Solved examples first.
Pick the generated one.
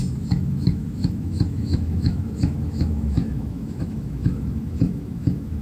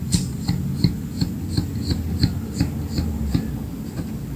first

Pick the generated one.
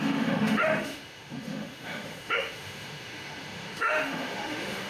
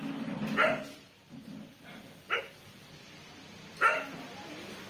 first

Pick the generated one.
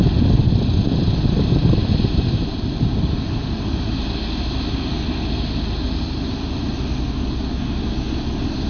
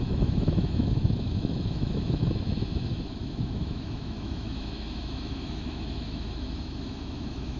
second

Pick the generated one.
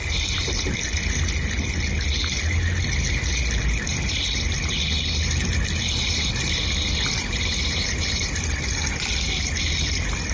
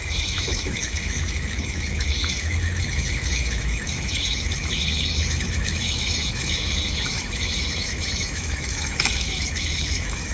second